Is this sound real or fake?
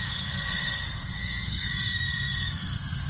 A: fake